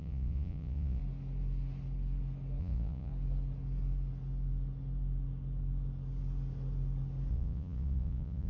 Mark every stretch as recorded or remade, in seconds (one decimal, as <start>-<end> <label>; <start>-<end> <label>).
0.0-1.0 remade; 1.0-2.6 recorded; 2.6-3.1 remade; 3.1-7.3 recorded; 7.3-8.5 remade